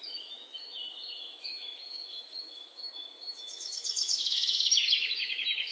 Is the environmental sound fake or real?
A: fake